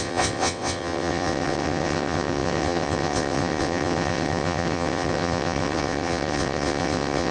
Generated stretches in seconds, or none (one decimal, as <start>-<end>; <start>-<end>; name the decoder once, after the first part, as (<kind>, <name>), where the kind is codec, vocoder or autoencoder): 0.0-7.3 (vocoder, WaveNeXt)